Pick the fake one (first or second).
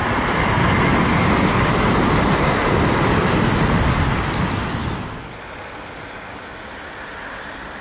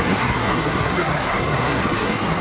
second